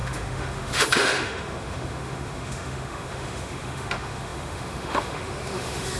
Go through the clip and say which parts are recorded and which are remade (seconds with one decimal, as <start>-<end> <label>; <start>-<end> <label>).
0.0-6.0 remade